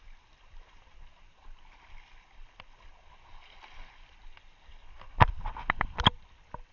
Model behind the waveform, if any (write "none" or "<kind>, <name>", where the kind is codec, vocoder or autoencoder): none